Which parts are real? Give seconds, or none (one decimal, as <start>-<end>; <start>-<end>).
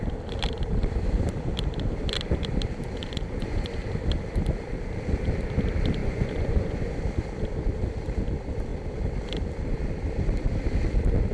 0.0-3.0; 3.7-6.0; 7.0-11.3